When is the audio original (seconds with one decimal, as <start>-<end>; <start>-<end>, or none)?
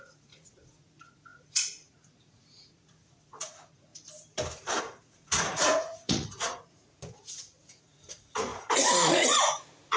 3.9-4.8